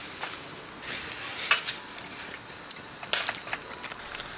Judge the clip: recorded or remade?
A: recorded